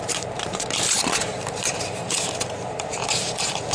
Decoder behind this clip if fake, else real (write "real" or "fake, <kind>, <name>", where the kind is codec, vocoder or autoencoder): fake, vocoder, BigVGAN v2